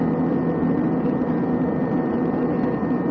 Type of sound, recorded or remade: recorded